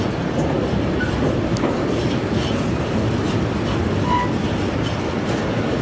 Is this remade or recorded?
recorded